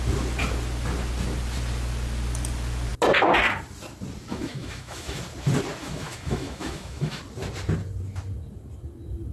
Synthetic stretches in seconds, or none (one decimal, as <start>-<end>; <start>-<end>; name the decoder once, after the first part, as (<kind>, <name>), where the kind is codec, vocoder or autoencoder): 4.3-5.2 (autoencoder, DAC-VAE); 5.8-7.2